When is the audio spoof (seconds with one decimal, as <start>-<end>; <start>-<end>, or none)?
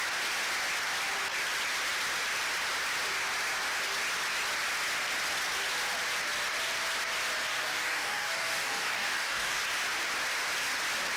7.5-9.6